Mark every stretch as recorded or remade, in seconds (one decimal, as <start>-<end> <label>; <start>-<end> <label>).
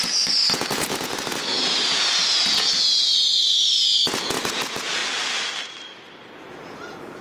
0.0-5.0 remade; 5.0-6.3 recorded; 6.3-7.2 remade